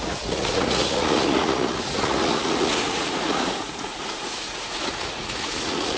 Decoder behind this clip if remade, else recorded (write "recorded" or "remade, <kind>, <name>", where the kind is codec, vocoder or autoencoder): remade, vocoder, Vocos